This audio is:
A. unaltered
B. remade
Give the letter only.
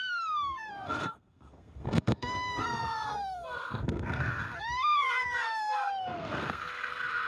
B